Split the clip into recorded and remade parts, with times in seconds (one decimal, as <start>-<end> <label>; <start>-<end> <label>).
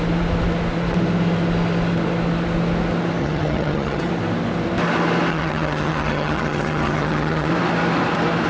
0.0-3.2 recorded; 3.2-4.1 remade; 4.1-5.3 recorded; 5.3-7.5 remade; 7.5-8.5 recorded